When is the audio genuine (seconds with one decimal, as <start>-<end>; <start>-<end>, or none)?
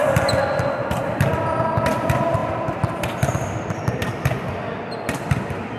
0.0-5.8